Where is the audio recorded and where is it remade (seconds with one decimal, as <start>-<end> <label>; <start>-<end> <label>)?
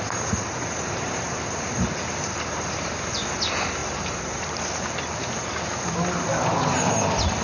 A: 0.0-7.4 recorded